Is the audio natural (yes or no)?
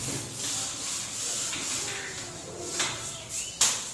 yes